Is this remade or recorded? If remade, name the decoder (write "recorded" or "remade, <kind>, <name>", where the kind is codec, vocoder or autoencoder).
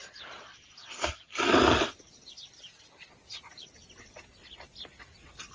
recorded